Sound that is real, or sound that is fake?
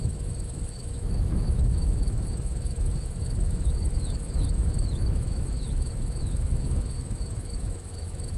fake